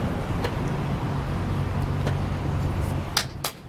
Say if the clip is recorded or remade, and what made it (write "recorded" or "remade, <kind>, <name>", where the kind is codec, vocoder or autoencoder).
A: recorded